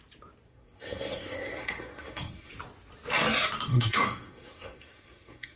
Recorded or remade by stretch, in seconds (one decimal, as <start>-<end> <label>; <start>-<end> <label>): 0.0-0.5 recorded; 0.5-2.5 remade; 2.5-3.7 recorded; 3.7-5.6 remade